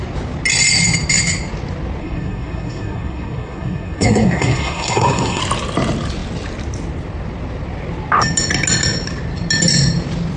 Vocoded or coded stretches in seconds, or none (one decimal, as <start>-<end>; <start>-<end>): 2.0-5.4

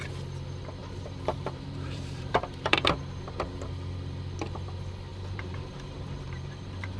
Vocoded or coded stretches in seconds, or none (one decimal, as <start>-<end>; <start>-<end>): 0.8-3.0; 5.1-7.0

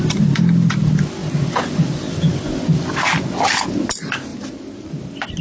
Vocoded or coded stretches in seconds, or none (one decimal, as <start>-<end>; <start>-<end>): none

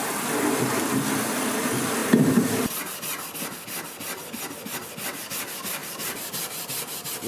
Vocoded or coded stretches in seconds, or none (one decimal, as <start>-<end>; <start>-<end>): 2.0-2.7; 5.8-7.3